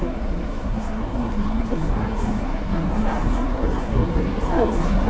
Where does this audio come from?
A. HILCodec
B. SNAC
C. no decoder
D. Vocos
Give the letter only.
B